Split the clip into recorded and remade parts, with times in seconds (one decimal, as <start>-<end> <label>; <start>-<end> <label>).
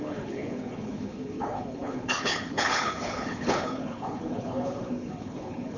0.0-5.8 remade